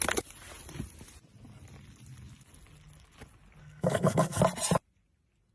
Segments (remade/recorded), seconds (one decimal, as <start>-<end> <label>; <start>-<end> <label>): 0.0-3.6 recorded; 3.6-4.4 remade; 4.4-5.5 recorded